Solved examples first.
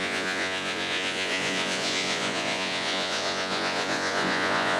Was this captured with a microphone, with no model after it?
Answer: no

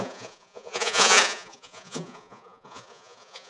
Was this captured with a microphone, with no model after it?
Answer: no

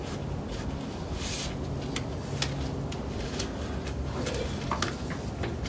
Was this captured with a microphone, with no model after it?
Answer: yes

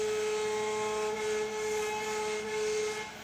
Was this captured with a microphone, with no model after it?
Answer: yes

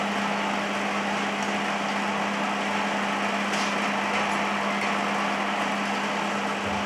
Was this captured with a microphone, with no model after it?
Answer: yes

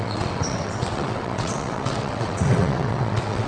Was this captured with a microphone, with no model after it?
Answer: no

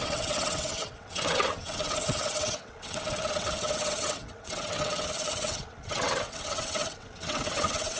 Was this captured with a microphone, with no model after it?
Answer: no